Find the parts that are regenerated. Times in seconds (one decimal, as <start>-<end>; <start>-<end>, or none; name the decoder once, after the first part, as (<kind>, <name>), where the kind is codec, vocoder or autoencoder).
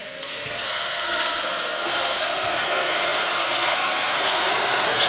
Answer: 0.0-5.1 (codec, SNAC)